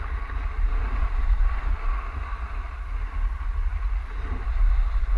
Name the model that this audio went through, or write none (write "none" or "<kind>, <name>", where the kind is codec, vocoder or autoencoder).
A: none